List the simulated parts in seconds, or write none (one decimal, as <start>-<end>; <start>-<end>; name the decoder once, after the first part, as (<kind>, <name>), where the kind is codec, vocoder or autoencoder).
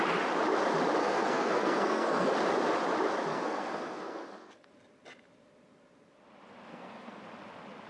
1.0-2.3 (codec, SNAC); 3.3-4.7; 6.7-7.2